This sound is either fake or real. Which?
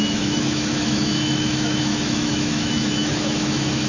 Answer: fake